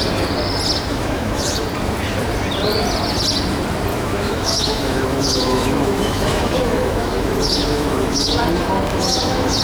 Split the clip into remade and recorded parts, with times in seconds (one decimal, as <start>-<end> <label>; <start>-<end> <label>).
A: 0.0-0.9 recorded; 0.9-1.6 remade; 1.6-3.9 recorded; 3.9-8.4 remade; 8.4-8.9 recorded; 8.9-9.6 remade